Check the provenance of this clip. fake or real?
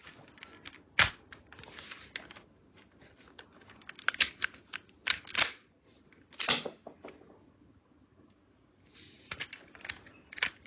real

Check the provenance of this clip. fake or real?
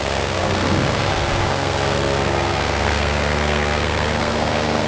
fake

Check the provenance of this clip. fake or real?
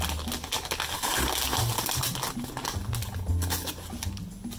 real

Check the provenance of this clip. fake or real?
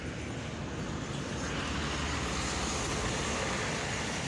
real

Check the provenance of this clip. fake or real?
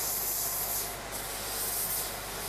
real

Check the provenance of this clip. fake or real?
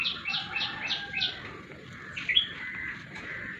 real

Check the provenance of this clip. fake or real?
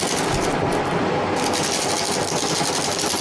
real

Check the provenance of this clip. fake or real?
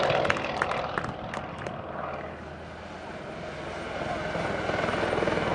real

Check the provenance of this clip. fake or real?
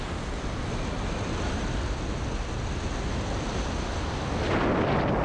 real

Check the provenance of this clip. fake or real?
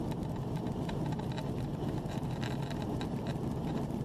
fake